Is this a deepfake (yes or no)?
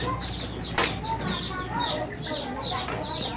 no